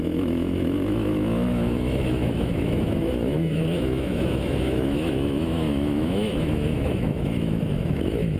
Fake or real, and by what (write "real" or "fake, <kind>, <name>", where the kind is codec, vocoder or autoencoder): fake, autoencoder, DAC-VAE